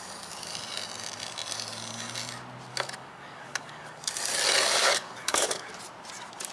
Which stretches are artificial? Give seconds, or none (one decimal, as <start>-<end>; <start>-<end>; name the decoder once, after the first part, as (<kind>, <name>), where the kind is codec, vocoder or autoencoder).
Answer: 2.7-4.0 (codec, DAC); 4.8-5.7